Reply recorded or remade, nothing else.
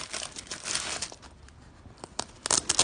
recorded